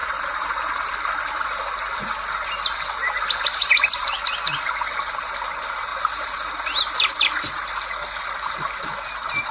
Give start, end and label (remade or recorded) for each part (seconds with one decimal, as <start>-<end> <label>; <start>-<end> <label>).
0.0-9.5 recorded